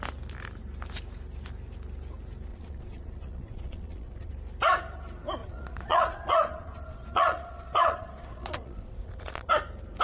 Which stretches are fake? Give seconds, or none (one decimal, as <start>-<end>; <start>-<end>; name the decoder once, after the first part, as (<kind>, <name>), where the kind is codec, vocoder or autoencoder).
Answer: 2.5-4.3 (vocoder, Vocos); 5.4-9.5